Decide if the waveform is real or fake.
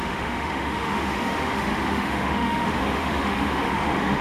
fake